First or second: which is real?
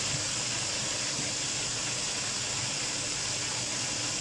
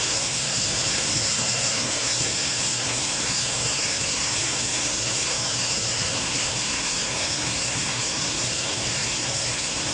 first